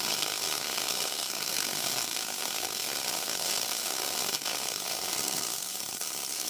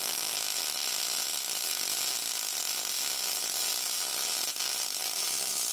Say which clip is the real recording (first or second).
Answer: second